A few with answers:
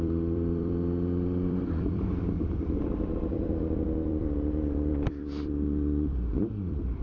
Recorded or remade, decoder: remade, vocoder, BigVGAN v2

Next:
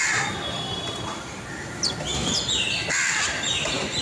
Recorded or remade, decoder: recorded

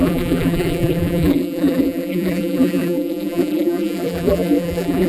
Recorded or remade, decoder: remade, vocoder, BigVGAN v2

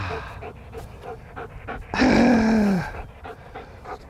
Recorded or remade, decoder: recorded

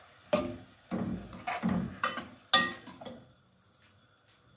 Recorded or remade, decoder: recorded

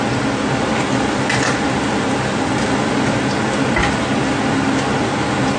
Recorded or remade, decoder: recorded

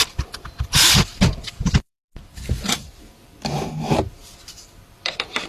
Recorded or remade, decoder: remade, vocoder, BigVGAN v2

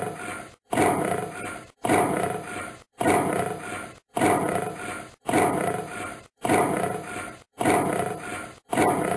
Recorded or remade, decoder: recorded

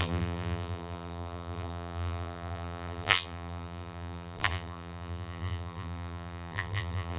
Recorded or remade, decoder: remade, vocoder, BigVGAN v2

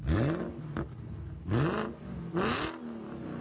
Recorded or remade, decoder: recorded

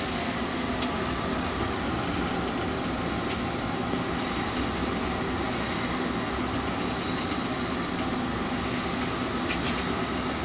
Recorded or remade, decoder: recorded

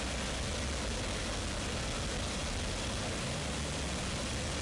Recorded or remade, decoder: recorded